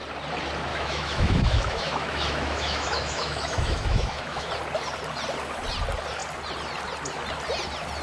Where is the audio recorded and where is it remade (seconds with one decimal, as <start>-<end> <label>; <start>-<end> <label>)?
0.0-0.7 recorded; 0.7-4.5 remade; 4.5-8.0 recorded